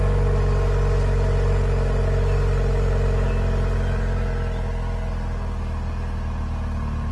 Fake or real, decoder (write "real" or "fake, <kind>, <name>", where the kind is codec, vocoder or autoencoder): real